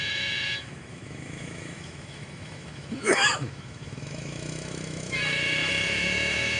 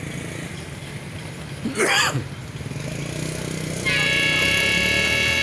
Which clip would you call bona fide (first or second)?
second